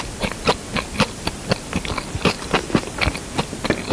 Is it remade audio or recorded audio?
recorded